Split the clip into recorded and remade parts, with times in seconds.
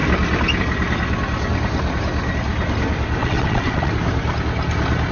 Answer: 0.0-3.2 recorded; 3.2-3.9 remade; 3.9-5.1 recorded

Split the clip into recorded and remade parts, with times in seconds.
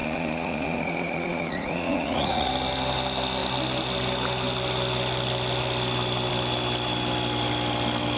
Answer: 0.0-2.5 remade; 2.5-8.2 recorded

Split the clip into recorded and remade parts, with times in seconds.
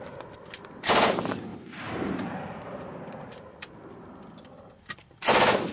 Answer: 0.0-1.5 recorded; 1.5-3.4 remade; 3.4-5.7 recorded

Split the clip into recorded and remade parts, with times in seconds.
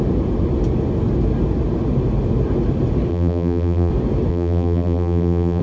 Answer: 0.0-3.1 recorded; 3.1-3.9 remade; 3.9-4.3 recorded; 4.3-5.6 remade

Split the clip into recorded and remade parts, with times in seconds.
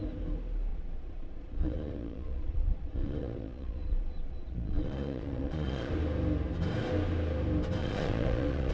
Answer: 0.0-0.7 recorded; 0.7-5.9 remade; 5.9-7.8 recorded; 7.8-8.7 remade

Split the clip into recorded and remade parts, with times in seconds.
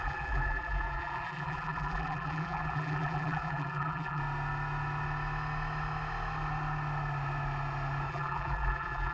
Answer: 0.0-4.2 remade; 4.2-8.1 recorded; 8.1-9.1 remade